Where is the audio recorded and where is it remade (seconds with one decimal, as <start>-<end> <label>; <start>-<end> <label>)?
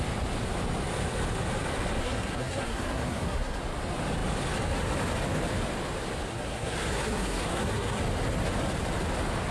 0.0-2.0 recorded; 2.0-3.6 remade; 3.6-6.3 recorded; 6.3-8.0 remade; 8.0-9.5 recorded